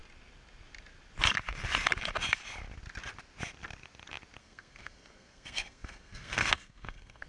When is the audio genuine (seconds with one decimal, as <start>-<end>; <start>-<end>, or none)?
0.0-4.4